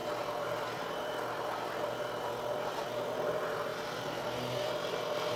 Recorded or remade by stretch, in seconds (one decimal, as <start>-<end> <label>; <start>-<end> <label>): 0.0-5.4 recorded

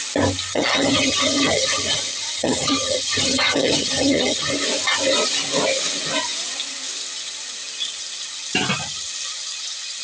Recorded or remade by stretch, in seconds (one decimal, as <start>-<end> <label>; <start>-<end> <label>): 0.0-0.5 recorded; 0.5-4.5 remade; 4.5-10.0 recorded

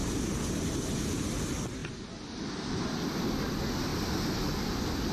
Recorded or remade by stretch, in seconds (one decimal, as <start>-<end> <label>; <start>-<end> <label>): 0.0-5.1 recorded

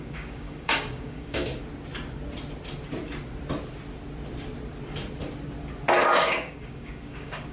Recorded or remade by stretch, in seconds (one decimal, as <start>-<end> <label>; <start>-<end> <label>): 0.0-1.5 remade; 1.5-6.0 recorded; 6.0-7.5 remade

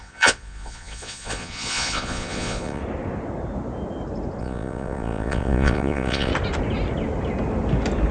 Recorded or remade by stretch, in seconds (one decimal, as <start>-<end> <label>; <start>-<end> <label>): 0.0-2.8 remade; 2.8-4.4 recorded; 4.4-6.3 remade; 6.3-8.1 recorded